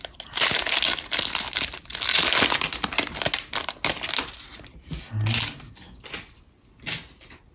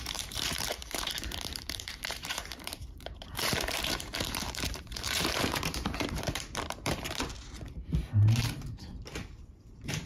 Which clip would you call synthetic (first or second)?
second